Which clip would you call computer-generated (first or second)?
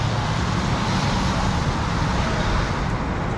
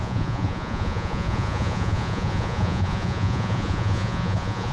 second